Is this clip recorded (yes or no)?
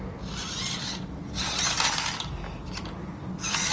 yes